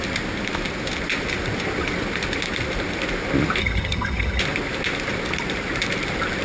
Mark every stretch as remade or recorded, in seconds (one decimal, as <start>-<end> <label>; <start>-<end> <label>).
0.0-3.6 recorded; 3.6-4.4 remade; 4.4-6.4 recorded